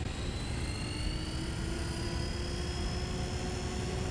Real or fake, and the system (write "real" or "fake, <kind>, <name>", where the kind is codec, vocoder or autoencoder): real